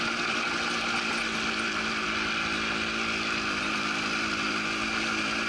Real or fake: real